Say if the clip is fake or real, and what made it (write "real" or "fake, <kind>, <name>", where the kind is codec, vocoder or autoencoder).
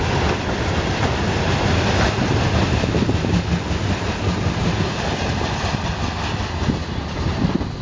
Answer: real